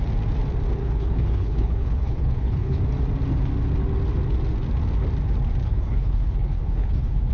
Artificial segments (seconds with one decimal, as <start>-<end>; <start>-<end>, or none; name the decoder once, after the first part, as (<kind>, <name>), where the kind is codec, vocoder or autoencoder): 0.8-2.8 (codec, HILCodec); 5.6-7.3